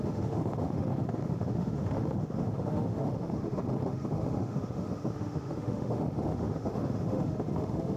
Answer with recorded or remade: remade